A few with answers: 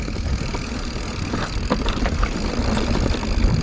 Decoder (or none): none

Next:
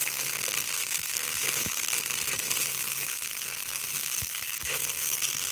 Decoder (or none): codec, SNAC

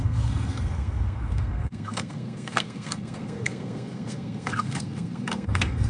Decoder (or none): codec, SNAC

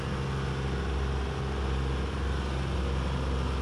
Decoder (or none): none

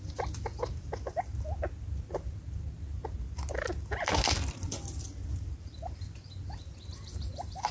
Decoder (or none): none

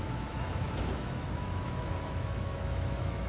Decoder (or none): autoencoder, DAC-VAE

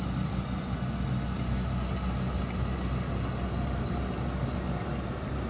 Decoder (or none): none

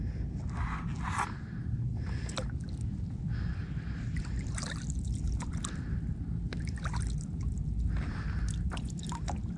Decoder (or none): none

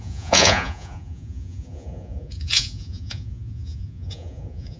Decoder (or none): vocoder, Vocos